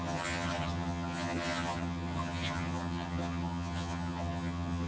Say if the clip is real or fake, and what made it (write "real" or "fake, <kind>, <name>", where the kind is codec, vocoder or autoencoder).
fake, vocoder, HiFi-GAN